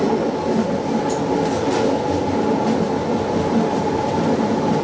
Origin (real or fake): real